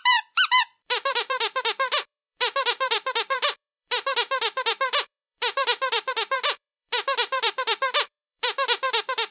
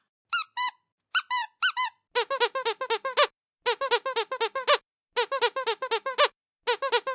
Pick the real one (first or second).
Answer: second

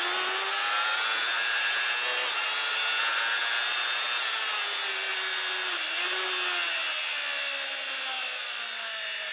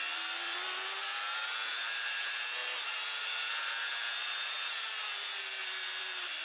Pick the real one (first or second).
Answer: first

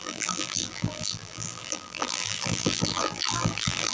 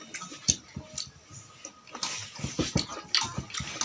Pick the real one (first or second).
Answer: second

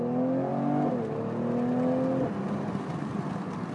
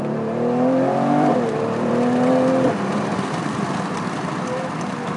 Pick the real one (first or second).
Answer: first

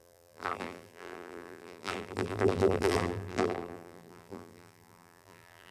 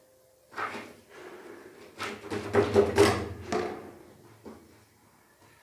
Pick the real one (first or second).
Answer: second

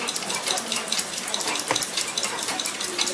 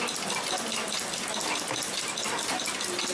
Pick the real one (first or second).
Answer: second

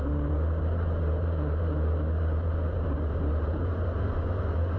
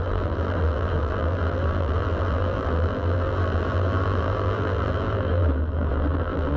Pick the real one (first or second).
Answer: first